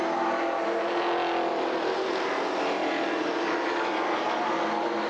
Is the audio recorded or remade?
recorded